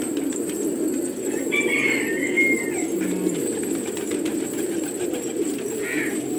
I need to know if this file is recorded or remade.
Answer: recorded